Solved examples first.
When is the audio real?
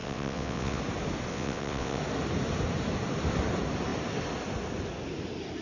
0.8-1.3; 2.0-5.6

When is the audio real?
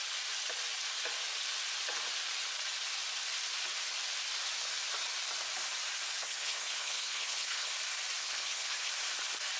0.0-6.2; 7.7-8.2; 8.9-9.6